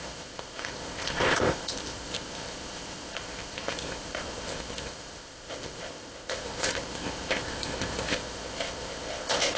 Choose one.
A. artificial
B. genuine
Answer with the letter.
A